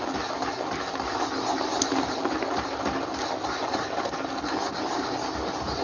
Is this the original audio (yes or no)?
yes